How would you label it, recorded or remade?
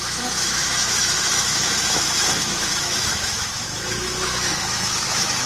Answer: remade